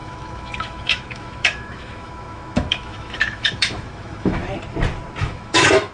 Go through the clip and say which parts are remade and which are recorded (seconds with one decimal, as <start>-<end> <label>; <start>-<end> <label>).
0.0-4.4 remade; 4.4-5.2 recorded; 5.2-5.9 remade